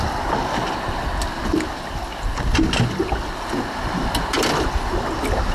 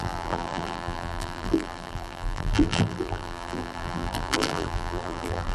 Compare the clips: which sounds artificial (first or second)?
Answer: second